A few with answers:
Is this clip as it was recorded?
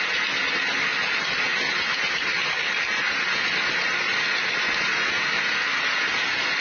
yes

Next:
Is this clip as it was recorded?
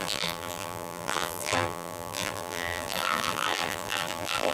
no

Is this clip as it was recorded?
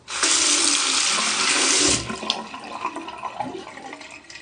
yes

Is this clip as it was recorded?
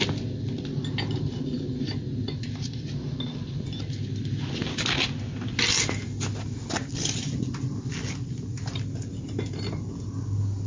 yes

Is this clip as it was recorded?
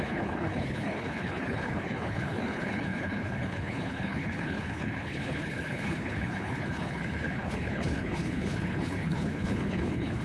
no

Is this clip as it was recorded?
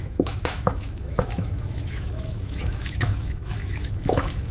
no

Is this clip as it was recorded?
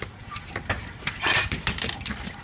yes